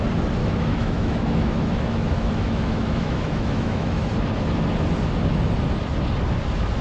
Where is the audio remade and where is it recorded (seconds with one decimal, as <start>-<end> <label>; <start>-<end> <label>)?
0.0-0.4 recorded; 0.4-4.1 remade; 4.1-6.8 recorded